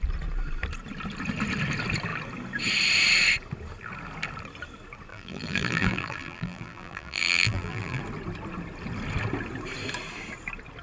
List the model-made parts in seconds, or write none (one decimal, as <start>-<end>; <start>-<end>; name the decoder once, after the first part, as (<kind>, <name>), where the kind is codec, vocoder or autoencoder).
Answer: 5.1-8.0 (vocoder, BigVGAN v2)